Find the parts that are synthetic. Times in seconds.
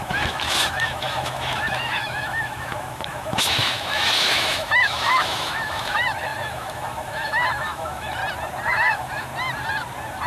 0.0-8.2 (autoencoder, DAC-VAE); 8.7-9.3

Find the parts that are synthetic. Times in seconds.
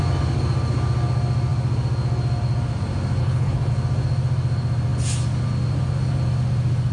3.2-3.7 (codec, HILCodec)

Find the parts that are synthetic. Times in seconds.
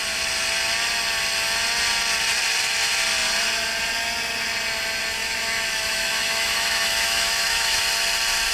5.2-7.8 (autoencoder, DAC-VAE)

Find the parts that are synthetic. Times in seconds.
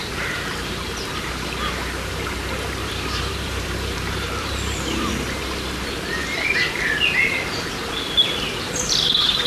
2.8-5.1 (vocoder, BigVGAN v2)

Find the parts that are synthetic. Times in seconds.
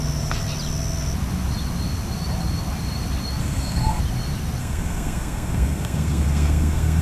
3.4-4.0 (codec, SNAC); 4.6-7.0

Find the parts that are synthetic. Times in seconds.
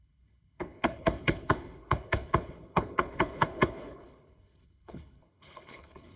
0.0-6.2 (codec, HILCodec)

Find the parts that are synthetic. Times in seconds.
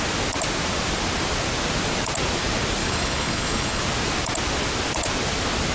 2.8-3.8 (codec, HILCodec)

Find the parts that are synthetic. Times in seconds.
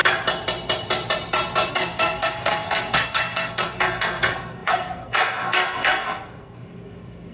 1.7-7.3 (codec, SNAC)